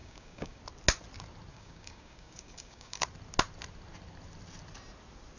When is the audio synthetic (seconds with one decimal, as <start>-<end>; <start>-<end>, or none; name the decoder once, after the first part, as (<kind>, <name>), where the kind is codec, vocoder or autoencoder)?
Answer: 0.0-0.6 (codec, DAC); 1.5-3.0